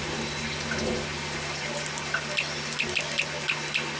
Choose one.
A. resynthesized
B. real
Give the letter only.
B